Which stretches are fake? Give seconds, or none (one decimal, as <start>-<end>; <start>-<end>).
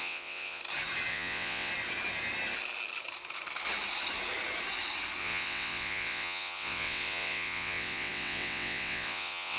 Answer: 0.0-0.6; 1.1-1.7; 5.2-9.6